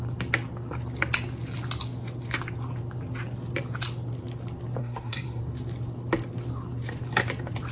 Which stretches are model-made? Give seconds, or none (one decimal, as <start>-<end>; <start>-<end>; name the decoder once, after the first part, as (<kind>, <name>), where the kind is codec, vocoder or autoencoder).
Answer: 4.8-5.4 (codec, SNAC)